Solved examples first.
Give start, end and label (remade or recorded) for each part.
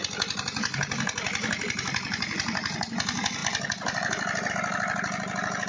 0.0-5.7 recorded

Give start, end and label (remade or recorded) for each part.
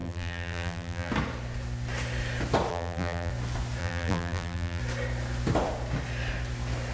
0.0-1.1 remade; 1.1-2.7 recorded; 2.7-3.3 remade; 3.3-3.8 recorded; 3.8-4.8 remade; 4.8-6.9 recorded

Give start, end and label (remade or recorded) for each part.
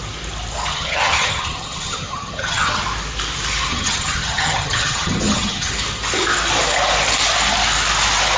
0.0-0.7 recorded; 0.7-2.8 remade; 2.8-3.7 recorded; 3.7-5.7 remade; 5.7-8.4 recorded